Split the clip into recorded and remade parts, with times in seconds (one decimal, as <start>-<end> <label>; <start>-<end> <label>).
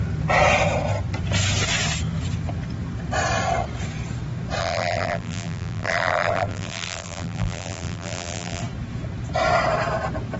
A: 0.0-4.6 recorded; 4.6-8.6 remade; 8.6-10.4 recorded